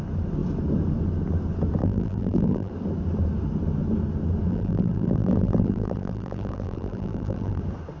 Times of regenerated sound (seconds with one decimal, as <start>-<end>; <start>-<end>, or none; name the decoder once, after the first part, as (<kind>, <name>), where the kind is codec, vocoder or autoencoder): 1.8-2.7 (vocoder, BigVGAN v2); 4.5-7.6